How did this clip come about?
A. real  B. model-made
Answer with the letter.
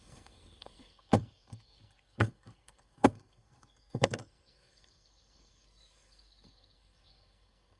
B